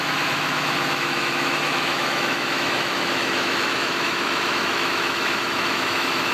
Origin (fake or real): fake